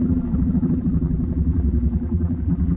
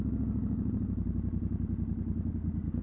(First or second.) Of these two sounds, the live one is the second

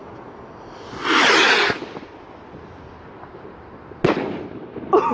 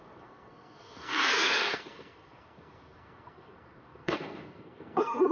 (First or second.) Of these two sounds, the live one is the first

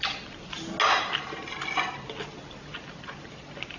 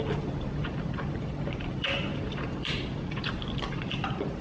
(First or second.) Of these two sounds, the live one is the first